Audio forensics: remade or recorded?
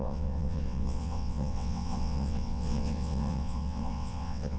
remade